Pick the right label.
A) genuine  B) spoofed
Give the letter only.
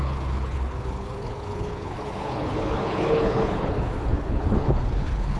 B